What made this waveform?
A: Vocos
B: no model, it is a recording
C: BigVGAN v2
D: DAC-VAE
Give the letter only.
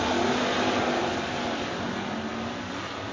B